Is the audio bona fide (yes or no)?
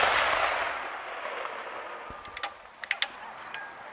yes